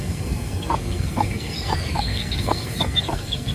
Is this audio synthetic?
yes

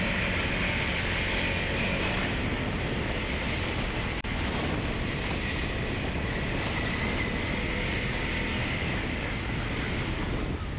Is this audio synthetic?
no